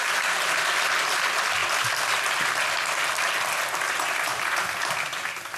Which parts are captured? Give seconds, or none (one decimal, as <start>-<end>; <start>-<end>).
0.0-5.6